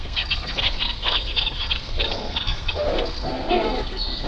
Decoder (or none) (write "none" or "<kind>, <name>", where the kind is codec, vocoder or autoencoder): codec, SNAC